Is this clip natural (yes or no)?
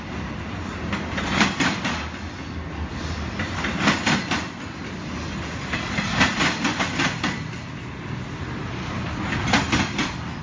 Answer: yes